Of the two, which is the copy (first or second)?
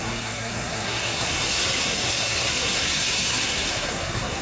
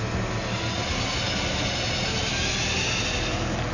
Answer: first